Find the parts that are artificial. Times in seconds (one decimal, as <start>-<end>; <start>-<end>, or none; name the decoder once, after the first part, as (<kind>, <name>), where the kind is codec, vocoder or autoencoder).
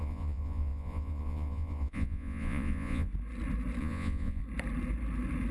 0.0-3.1 (vocoder, Vocos); 3.8-4.4